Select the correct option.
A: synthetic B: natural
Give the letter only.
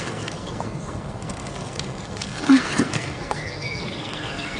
A